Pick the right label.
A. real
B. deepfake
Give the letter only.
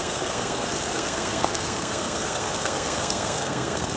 B